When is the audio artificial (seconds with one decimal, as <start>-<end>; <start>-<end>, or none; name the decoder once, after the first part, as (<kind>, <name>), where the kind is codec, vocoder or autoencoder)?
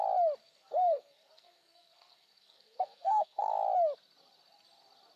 0.4-3.5 (codec, SNAC)